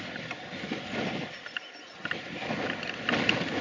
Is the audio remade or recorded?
recorded